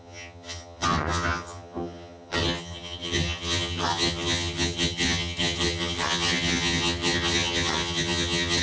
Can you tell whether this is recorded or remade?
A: remade